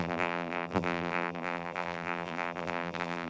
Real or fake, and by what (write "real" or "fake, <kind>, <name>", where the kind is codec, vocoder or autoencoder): fake, vocoder, BigVGAN v2